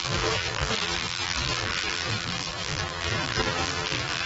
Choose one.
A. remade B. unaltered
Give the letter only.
A